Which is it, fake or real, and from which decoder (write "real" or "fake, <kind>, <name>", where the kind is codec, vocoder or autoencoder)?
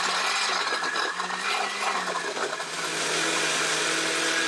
real